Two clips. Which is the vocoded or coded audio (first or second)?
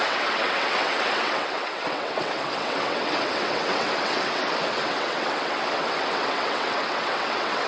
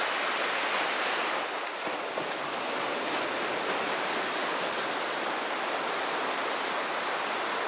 first